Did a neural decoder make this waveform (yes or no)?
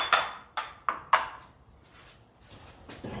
no